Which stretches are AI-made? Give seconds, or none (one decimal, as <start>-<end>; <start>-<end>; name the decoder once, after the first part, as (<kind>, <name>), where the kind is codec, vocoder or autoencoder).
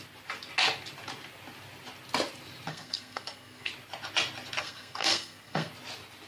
2.7-3.7 (codec, SNAC); 4.6-5.7